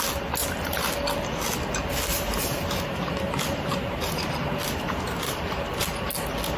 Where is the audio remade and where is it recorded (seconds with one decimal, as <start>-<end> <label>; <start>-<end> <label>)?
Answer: 0.0-2.1 recorded; 2.1-6.1 remade; 6.1-6.6 recorded